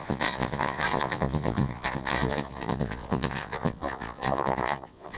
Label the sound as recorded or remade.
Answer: remade